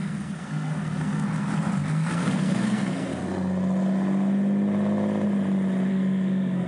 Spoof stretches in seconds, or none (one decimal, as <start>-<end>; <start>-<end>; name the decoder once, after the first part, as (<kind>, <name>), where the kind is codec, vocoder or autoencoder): 0.0-3.1 (codec, SNAC); 5.9-6.7